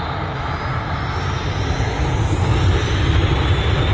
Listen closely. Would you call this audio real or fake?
real